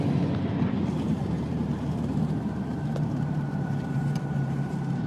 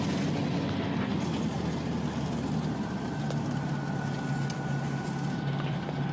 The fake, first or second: first